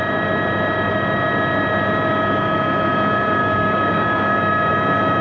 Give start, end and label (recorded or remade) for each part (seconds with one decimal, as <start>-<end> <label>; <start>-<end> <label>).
0.0-3.4 recorded; 3.4-4.7 remade; 4.7-5.2 recorded